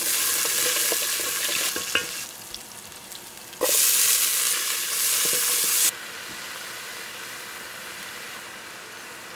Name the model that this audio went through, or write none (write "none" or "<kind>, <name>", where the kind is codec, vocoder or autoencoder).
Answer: none